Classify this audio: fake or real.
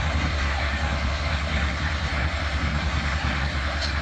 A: fake